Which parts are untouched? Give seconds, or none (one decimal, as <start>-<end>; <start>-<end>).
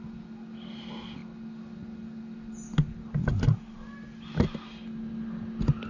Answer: 0.0-5.9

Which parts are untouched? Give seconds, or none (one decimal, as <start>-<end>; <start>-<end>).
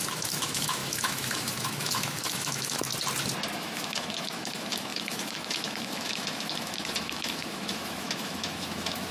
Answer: 2.9-3.6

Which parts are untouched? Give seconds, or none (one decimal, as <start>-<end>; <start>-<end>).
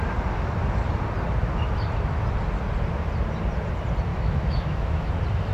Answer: 0.0-4.1; 5.1-5.5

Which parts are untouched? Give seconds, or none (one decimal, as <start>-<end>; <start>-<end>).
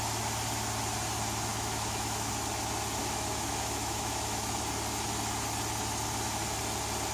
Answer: 0.0-1.5; 2.3-3.0; 4.6-7.1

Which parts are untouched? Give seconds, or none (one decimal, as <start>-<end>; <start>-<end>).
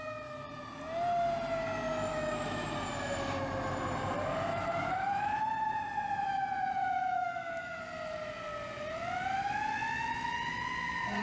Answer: 0.0-2.1; 2.7-4.5; 5.4-6.8; 7.8-11.2